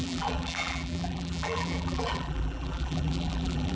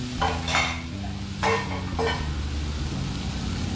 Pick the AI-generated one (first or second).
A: first